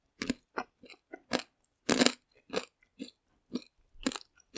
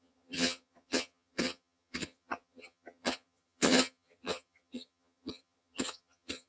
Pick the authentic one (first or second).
first